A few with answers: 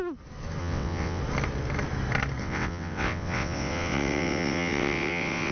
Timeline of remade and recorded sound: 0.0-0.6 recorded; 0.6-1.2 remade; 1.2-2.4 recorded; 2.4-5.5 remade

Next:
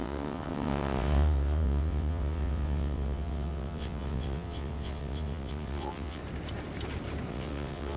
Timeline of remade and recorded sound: 0.0-6.2 remade; 6.2-7.3 recorded; 7.3-8.0 remade

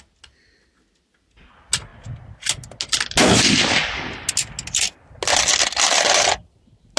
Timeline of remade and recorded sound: 0.0-7.0 recorded

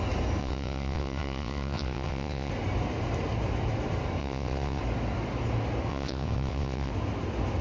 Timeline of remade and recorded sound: 0.0-0.4 recorded; 0.4-2.5 remade; 2.5-4.2 recorded; 4.2-4.8 remade; 4.8-5.9 recorded; 5.9-6.9 remade; 6.9-7.6 recorded